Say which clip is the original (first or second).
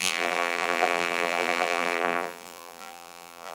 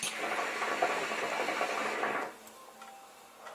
second